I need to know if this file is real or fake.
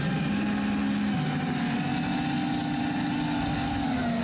real